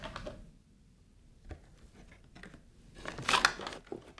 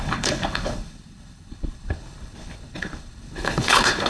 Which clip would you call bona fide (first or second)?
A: first